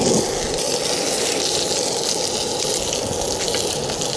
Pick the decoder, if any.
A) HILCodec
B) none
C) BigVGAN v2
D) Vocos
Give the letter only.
B